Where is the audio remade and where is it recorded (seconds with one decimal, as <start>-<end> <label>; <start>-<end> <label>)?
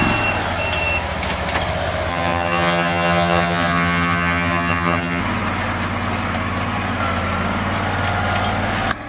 0.0-2.1 recorded; 2.1-5.2 remade; 5.2-9.1 recorded